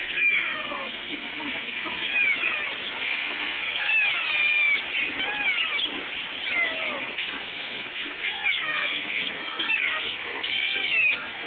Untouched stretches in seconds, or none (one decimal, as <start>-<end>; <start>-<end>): 2.1-3.0; 3.9-7.0